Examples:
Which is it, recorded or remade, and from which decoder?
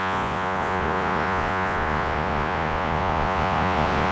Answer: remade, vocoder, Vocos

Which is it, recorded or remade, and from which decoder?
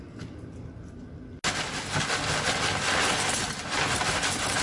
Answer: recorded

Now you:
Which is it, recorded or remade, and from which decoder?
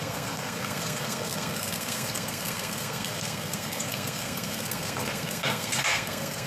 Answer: remade, codec, SNAC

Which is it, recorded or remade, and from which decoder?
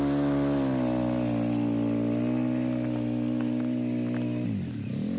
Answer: recorded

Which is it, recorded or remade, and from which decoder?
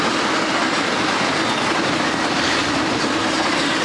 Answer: recorded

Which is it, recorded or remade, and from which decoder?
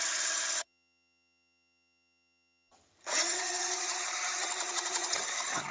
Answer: remade, vocoder, HiFi-GAN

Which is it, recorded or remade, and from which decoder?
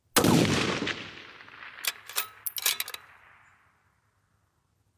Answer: recorded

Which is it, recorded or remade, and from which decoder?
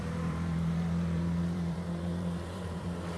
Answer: remade, vocoder, BigVGAN v2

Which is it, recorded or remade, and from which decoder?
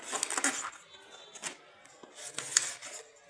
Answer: recorded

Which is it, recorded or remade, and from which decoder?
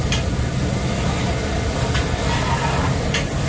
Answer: recorded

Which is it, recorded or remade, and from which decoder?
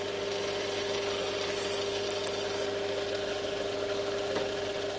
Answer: recorded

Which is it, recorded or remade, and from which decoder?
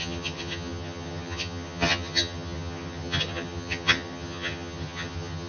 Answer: remade, vocoder, HiFi-GAN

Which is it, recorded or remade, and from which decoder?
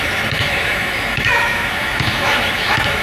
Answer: remade, autoencoder, DAC-VAE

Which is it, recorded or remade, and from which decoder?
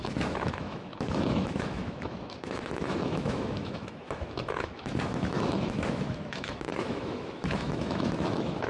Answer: remade, autoencoder, DAC-VAE